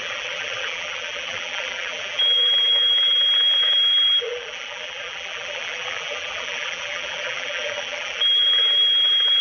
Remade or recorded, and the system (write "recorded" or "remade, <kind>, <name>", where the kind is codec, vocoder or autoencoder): remade, vocoder, BigVGAN v2